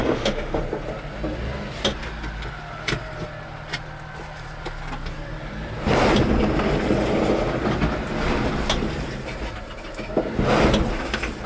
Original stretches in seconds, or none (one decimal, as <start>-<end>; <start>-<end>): 0.6-11.5

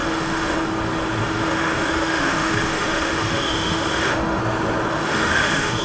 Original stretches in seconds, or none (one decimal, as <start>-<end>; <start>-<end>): 0.7-1.2; 4.4-4.9

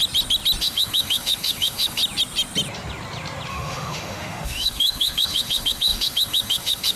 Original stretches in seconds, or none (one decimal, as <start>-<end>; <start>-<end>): 0.0-0.6; 2.0-3.5

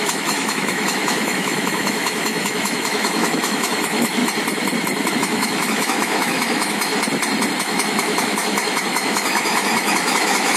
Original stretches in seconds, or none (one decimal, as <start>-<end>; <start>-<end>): 4.2-5.1; 6.9-7.6

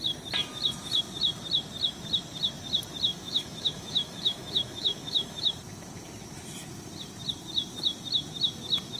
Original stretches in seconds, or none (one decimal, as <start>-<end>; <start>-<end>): 0.0-3.1; 5.5-9.0

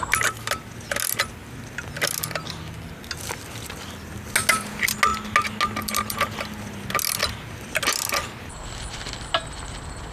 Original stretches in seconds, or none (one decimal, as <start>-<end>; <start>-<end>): 0.0-10.1

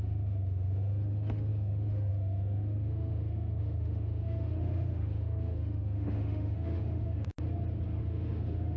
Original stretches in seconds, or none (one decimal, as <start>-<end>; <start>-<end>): 7.3-8.0

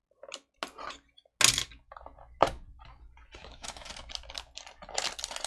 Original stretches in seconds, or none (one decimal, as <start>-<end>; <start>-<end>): 0.0-3.4; 3.9-5.5